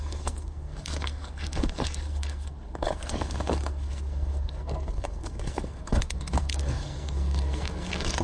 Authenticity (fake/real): fake